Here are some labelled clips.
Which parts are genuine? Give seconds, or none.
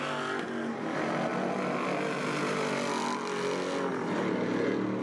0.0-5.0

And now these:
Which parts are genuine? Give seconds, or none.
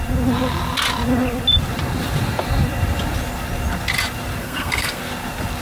0.0-4.4; 5.0-5.6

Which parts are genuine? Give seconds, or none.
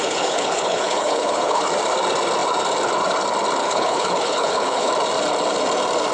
1.6-3.6; 4.9-6.1